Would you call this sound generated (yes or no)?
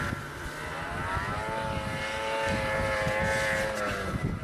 no